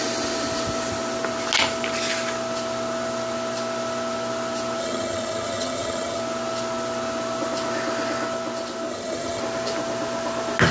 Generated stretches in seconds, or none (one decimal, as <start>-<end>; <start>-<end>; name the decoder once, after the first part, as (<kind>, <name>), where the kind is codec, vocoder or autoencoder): 4.8-6.2 (vocoder, HiFi-GAN); 8.9-9.4